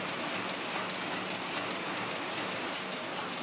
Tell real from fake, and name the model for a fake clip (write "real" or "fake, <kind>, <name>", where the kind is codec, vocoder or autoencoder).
real